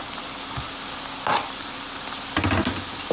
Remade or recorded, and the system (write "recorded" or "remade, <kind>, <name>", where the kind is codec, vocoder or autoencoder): recorded